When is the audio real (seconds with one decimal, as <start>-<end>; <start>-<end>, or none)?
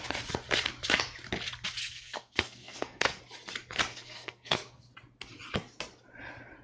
0.0-1.8; 3.2-3.9; 4.9-6.6